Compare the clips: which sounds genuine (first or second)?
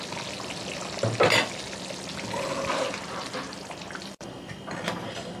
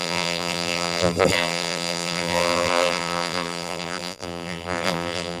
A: first